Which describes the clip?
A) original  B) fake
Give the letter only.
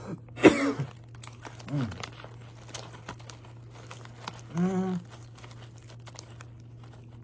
A